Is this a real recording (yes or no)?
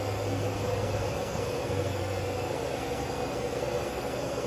no